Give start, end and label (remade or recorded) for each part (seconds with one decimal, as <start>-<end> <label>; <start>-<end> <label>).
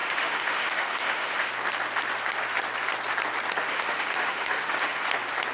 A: 0.0-1.5 remade; 1.5-3.7 recorded; 3.7-5.1 remade; 5.1-5.5 recorded